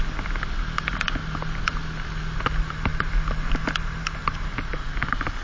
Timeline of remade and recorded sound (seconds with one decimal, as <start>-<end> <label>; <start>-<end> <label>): 0.0-5.4 recorded